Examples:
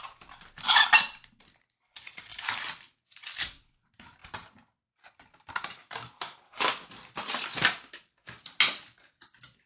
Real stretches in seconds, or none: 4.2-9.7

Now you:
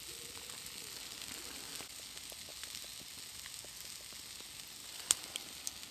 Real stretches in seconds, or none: 0.0-4.8; 5.5-5.9

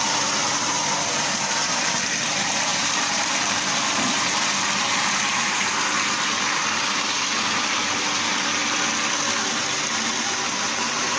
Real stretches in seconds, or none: 8.6-10.2

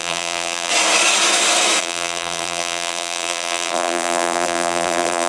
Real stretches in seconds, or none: 0.7-1.8

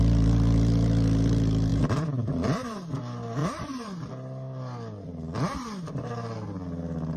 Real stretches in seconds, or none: 0.0-1.7; 2.9-3.4; 4.1-7.2

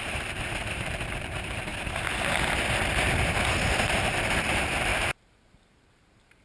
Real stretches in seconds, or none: 1.7-3.5

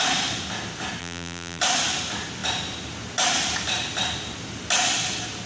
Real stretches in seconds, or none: 0.0-1.0; 1.6-5.5

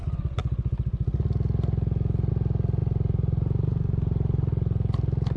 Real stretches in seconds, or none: 0.0-2.8; 4.5-5.4